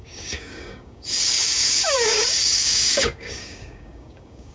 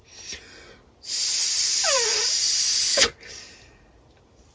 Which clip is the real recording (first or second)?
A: second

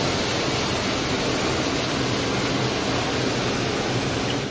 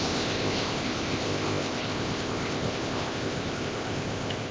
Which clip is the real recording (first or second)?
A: first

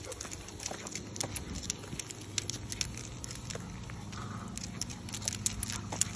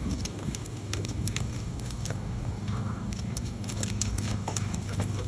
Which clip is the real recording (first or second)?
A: first